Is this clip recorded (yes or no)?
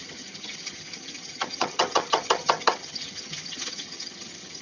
no